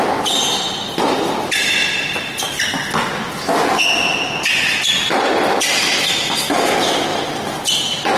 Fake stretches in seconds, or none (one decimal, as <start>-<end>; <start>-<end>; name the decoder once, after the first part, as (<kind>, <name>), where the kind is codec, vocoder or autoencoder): 0.0-2.7 (vocoder, BigVGAN v2); 5.9-8.2